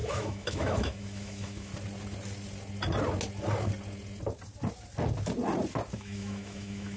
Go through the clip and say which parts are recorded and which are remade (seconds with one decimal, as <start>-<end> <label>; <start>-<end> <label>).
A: 0.0-1.7 remade; 1.7-5.9 recorded; 5.9-7.0 remade